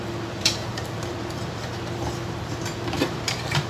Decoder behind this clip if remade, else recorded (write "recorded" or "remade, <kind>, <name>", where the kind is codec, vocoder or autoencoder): remade, vocoder, BigVGAN v2